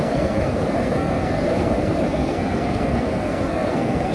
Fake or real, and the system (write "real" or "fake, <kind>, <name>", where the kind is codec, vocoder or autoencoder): fake, codec, SNAC